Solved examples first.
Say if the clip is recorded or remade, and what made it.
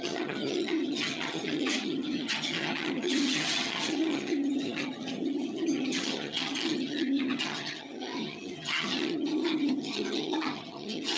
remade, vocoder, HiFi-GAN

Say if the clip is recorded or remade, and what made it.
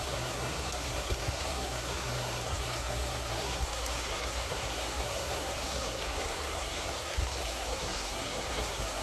remade, codec, SNAC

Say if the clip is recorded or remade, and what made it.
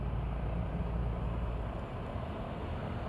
recorded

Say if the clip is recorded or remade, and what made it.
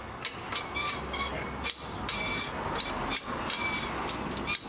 recorded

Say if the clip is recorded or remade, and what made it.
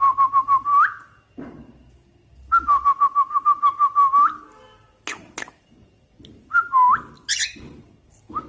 recorded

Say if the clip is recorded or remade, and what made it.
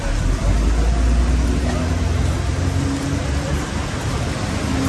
recorded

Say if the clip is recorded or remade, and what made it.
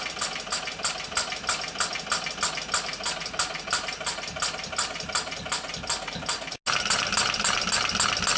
recorded